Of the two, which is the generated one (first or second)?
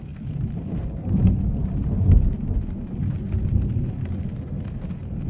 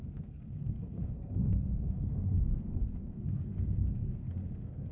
second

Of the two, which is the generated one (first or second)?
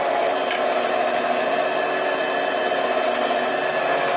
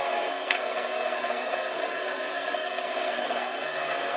second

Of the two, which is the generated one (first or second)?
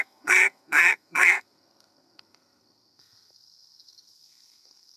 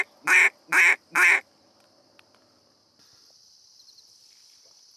first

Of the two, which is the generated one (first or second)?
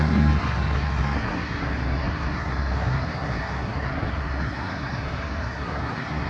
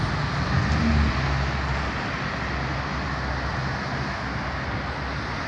first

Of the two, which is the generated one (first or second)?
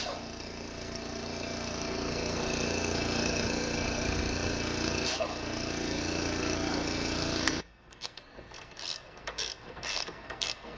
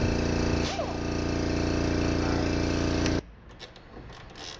first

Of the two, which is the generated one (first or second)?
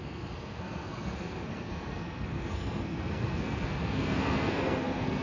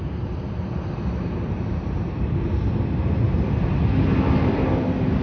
first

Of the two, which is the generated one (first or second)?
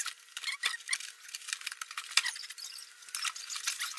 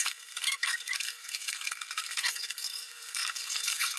second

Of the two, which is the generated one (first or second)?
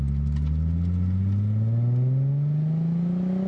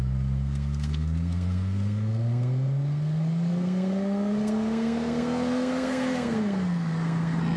second